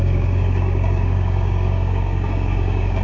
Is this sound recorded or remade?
remade